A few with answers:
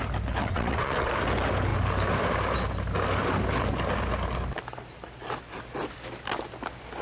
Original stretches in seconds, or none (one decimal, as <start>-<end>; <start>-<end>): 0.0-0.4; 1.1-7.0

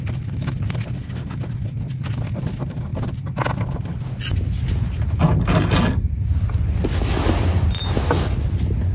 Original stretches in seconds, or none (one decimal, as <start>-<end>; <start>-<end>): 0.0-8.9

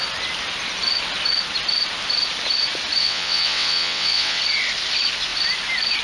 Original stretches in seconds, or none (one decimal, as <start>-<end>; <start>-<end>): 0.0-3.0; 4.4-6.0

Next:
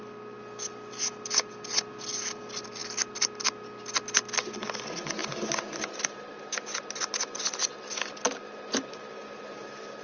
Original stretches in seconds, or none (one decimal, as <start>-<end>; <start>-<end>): 0.0-10.0